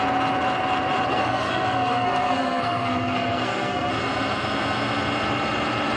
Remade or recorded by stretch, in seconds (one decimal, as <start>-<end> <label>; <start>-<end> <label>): 0.0-1.1 recorded; 1.1-3.9 remade; 3.9-6.0 recorded